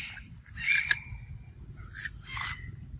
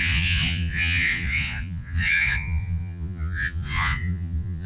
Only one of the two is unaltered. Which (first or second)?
first